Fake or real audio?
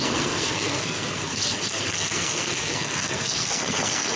fake